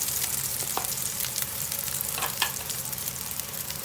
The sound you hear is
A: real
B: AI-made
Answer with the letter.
B